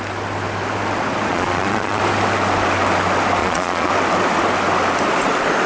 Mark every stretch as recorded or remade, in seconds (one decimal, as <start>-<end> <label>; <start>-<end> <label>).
0.0-1.3 recorded; 1.3-2.0 remade; 2.0-3.4 recorded; 3.4-3.9 remade; 3.9-5.7 recorded